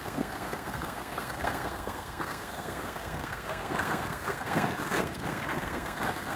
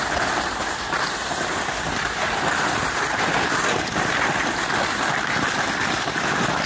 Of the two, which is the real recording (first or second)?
second